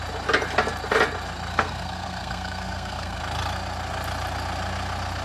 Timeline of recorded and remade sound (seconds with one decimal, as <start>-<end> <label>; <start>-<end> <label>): 0.0-1.5 recorded; 1.5-3.2 remade; 3.2-5.2 recorded